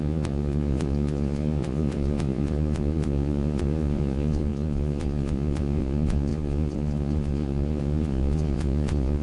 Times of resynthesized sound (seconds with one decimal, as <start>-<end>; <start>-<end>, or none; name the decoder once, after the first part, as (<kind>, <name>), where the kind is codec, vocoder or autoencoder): 0.0-9.2 (vocoder, Vocos)